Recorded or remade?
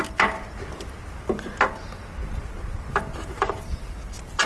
recorded